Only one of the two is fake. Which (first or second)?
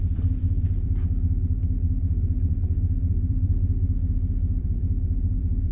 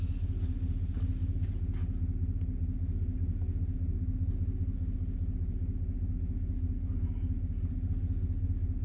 first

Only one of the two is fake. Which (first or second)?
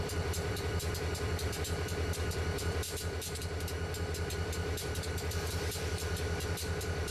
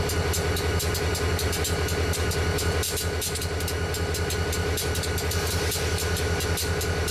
first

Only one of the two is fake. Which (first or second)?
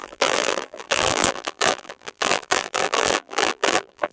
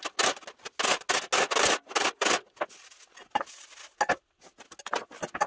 first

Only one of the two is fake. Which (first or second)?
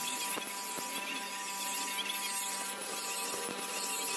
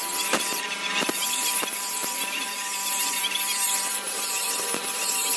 second